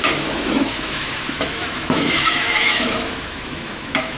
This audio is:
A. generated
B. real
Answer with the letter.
A